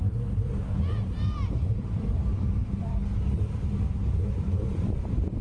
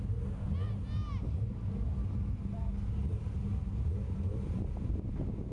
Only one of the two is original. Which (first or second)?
second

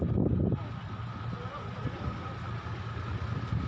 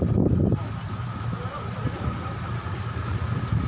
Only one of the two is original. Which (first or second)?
first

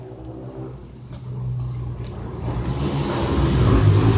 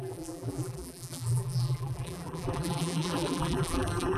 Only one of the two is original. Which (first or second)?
first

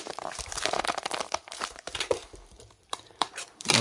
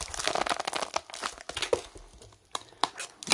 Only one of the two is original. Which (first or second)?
second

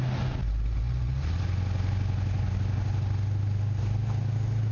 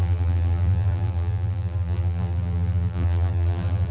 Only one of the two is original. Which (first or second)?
first